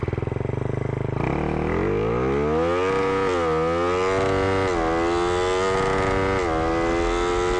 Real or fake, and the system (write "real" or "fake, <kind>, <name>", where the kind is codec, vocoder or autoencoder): real